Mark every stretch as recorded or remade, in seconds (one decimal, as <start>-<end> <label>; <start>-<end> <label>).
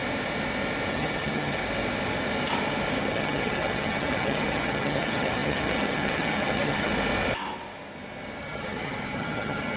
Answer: 0.0-0.9 recorded; 0.9-1.6 remade; 1.6-3.0 recorded; 3.0-6.9 remade; 6.9-8.4 recorded; 8.4-9.8 remade